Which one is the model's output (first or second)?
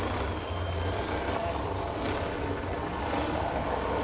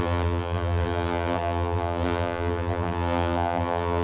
second